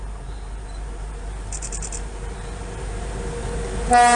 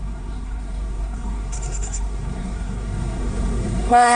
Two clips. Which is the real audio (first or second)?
first